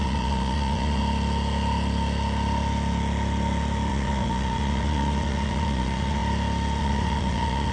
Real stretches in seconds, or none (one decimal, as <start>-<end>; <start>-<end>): 1.0-3.9; 6.2-6.8

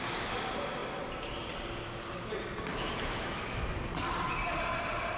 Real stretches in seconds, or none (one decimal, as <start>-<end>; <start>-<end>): 0.0-2.7; 3.6-5.2

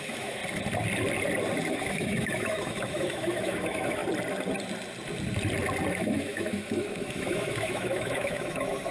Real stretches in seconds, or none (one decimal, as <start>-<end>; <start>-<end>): 0.4-1.7; 4.0-5.9

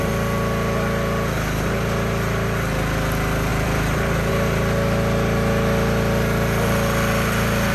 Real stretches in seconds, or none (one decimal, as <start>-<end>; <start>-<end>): 0.0-3.5; 4.3-7.7

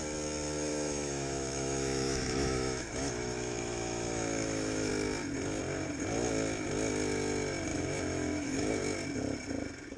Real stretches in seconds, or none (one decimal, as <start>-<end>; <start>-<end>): 0.0-0.7; 4.9-7.7; 8.7-10.0

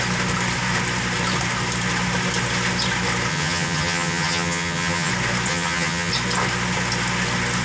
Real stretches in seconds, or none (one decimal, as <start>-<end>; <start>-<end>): 0.0-3.3; 5.1-5.5; 6.1-7.6

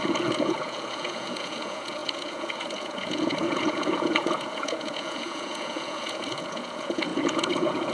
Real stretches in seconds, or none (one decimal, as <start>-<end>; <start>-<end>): none

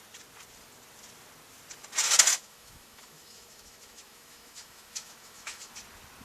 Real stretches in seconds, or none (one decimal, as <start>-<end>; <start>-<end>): 0.0-2.3; 5.7-6.2